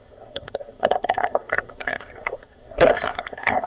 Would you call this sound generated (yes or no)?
yes